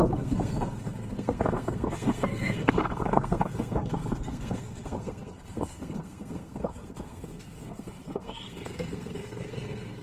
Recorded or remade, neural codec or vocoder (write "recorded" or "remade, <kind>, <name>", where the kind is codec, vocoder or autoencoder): remade, codec, SNAC